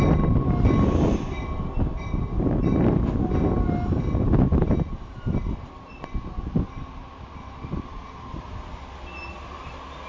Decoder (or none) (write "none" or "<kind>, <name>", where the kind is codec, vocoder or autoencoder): none